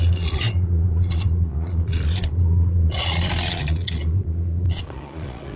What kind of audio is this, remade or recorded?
remade